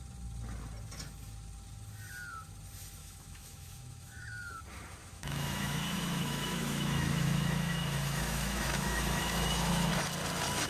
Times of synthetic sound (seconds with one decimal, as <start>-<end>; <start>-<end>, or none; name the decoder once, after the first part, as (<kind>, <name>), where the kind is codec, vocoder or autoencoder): 3.0-4.6 (autoencoder, DAC-VAE); 5.0-9.9